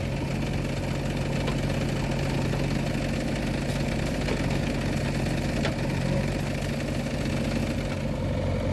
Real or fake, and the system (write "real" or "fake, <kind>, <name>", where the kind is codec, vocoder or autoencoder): real